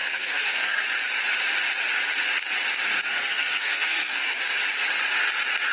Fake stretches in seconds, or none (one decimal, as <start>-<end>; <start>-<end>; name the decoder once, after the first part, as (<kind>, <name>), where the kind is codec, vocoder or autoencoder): 0.0-0.8 (codec, SNAC); 3.1-4.4